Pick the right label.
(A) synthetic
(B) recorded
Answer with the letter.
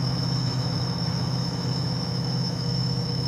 A